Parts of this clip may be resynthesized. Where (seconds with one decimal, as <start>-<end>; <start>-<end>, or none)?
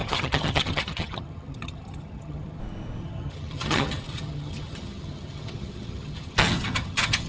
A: 0.0-2.6; 3.0-7.3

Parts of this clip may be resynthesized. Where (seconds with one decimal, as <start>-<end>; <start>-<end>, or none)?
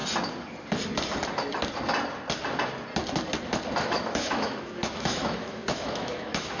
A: 3.8-6.6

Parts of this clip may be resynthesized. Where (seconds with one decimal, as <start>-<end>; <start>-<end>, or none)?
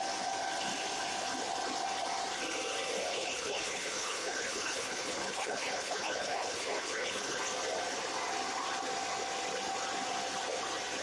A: 3.1-7.4